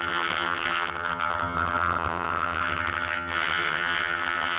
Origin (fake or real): fake